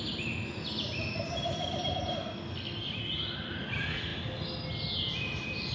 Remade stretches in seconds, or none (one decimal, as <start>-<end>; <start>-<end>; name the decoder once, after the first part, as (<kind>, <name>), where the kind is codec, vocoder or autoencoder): none